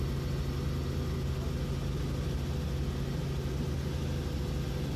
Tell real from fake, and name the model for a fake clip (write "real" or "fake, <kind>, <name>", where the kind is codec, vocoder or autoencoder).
real